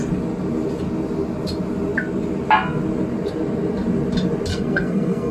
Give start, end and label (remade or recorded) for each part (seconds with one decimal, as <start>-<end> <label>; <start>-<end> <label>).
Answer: 0.0-4.5 recorded; 4.5-5.3 remade